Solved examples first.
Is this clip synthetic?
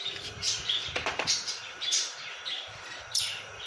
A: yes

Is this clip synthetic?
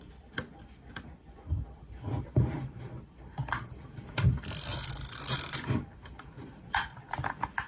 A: yes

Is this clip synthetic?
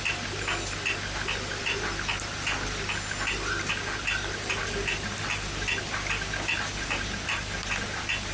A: no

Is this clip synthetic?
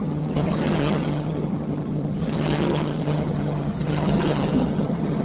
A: yes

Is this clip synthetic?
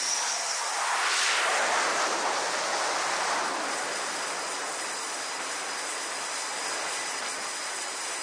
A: no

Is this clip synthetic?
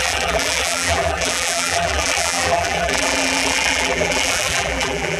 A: yes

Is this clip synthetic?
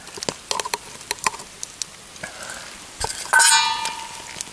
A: no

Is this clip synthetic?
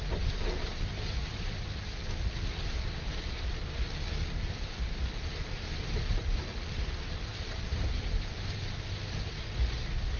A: no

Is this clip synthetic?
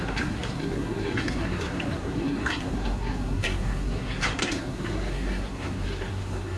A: yes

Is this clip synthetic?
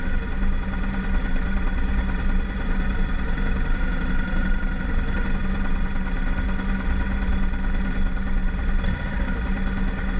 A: no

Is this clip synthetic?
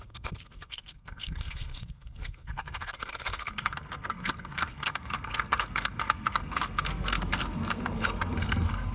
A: yes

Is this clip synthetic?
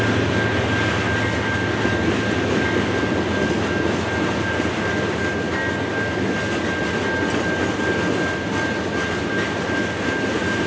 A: no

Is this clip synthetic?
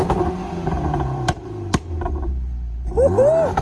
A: yes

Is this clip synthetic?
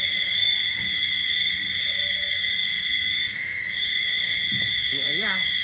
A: yes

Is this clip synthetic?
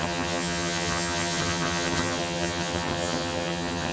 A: yes